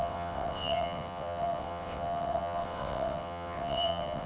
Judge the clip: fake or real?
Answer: fake